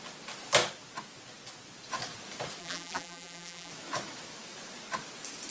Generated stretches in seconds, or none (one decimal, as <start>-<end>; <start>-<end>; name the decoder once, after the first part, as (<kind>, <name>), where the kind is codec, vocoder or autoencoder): 2.6-3.7 (vocoder, BigVGAN v2)